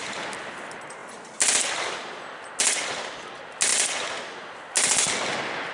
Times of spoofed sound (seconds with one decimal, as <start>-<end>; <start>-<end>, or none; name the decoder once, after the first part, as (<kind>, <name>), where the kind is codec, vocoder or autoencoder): none